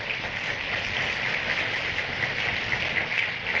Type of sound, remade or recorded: recorded